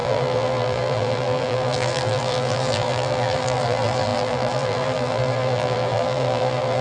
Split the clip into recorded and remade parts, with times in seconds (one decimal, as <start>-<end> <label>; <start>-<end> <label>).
0.0-6.8 remade